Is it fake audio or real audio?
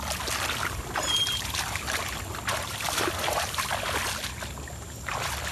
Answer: real